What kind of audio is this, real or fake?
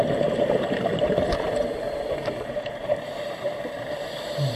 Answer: fake